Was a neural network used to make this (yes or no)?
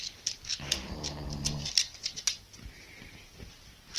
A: no